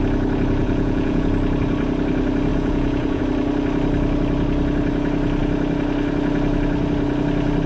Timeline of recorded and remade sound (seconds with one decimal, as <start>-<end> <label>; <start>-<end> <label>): 0.0-0.6 recorded; 0.6-1.3 remade; 1.3-2.5 recorded; 2.5-3.2 remade; 3.2-7.7 recorded